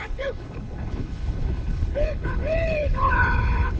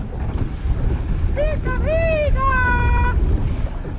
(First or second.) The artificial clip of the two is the first